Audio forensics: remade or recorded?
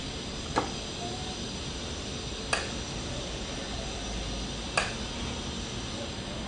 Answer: recorded